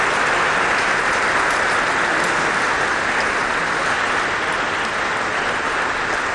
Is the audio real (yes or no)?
yes